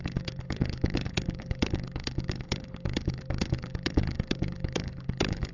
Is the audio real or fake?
fake